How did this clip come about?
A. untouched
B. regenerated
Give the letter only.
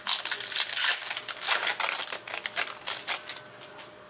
A